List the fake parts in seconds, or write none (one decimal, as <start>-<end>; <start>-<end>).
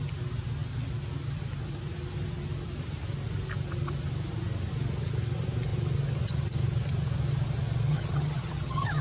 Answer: 7.9-9.0